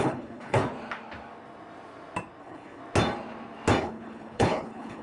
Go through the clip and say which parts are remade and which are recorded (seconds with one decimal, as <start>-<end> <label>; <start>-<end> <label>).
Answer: 0.0-0.6 remade; 0.6-2.4 recorded; 2.4-2.8 remade; 2.8-3.8 recorded; 3.8-5.0 remade